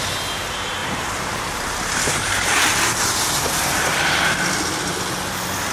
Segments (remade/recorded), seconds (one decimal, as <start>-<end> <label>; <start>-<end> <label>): 0.0-0.8 recorded; 0.8-4.2 remade; 4.2-5.7 recorded